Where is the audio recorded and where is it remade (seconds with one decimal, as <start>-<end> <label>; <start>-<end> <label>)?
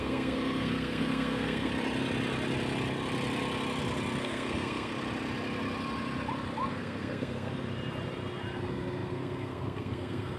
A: 0.0-1.7 remade; 1.7-4.2 recorded; 4.2-4.9 remade; 4.9-6.7 recorded; 6.7-7.5 remade; 7.5-8.6 recorded; 8.6-10.4 remade